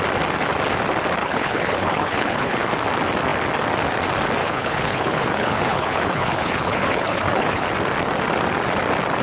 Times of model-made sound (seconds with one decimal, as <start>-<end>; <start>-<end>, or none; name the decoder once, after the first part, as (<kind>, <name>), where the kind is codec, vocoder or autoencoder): 1.2-2.7 (codec, HILCodec); 4.4-7.7